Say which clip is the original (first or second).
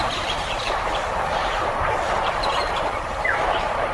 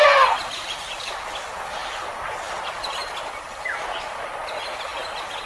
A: second